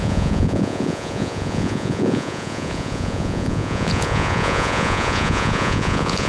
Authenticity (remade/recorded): remade